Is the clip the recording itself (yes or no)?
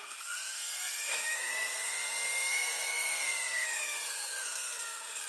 no